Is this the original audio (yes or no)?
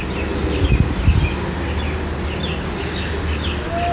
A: yes